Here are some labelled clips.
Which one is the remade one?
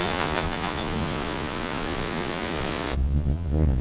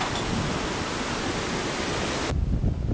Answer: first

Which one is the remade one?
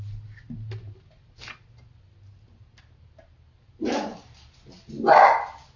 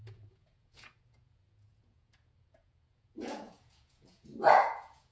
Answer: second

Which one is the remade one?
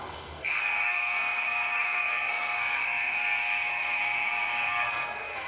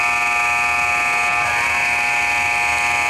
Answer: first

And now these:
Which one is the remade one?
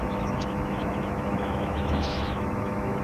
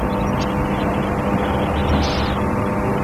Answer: first